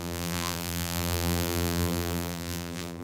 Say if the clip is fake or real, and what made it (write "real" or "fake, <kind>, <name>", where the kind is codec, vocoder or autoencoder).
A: fake, vocoder, BigVGAN v2